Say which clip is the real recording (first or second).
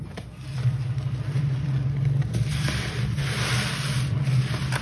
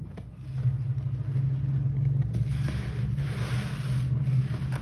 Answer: second